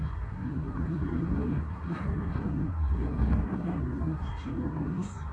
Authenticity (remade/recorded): remade